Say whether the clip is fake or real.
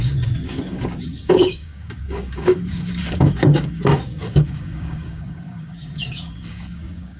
fake